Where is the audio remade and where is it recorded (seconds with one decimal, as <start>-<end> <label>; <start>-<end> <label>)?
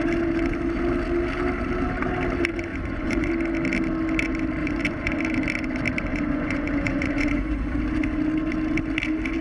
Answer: 0.0-2.7 recorded; 2.7-3.3 remade; 3.3-4.6 recorded; 4.6-5.2 remade; 5.2-6.1 recorded; 6.1-7.8 remade; 7.8-9.4 recorded